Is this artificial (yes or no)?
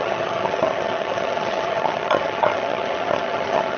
yes